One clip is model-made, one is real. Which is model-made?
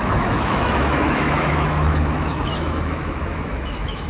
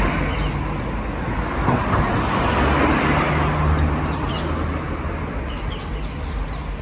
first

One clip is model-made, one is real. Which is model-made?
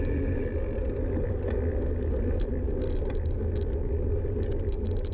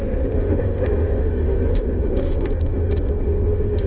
second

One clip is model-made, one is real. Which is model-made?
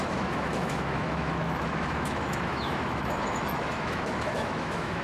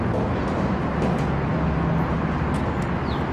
first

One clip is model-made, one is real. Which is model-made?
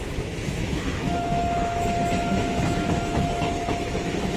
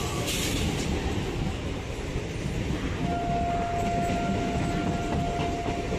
first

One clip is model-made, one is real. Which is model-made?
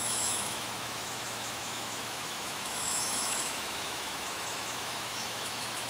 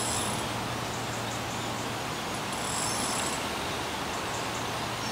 first